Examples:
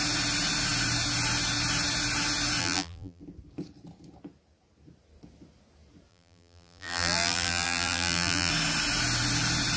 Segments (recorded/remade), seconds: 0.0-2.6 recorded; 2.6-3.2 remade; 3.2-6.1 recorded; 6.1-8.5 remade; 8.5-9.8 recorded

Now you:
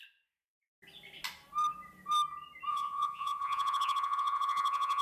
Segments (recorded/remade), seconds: 0.0-2.7 recorded; 2.7-5.0 remade

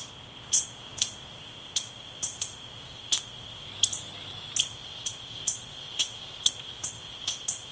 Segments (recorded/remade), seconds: 0.0-3.7 remade; 3.7-4.6 recorded; 4.6-7.7 remade